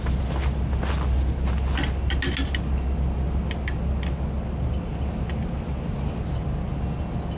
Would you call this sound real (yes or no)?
yes